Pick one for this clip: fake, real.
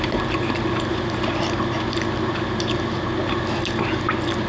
real